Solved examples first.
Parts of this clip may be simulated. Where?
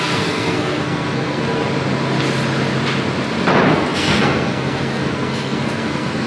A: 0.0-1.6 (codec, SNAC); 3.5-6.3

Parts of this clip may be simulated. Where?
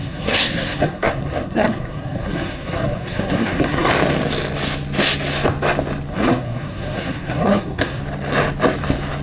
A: 0.0-3.9 (codec, SNAC); 6.1-8.0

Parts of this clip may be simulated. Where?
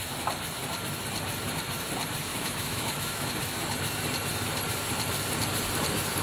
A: 2.3-3.3 (autoencoder, DAC-VAE)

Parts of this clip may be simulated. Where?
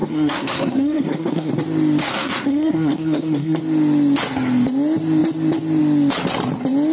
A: 0.0-1.5 (codec, SNAC); 2.0-3.6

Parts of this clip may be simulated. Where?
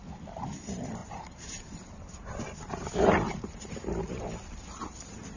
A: 1.0-4.2 (vocoder, BigVGAN v2)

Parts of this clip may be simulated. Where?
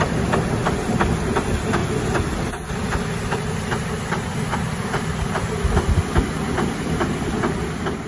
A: none